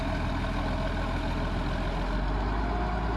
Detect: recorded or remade recorded